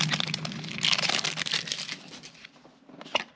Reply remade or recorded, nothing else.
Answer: recorded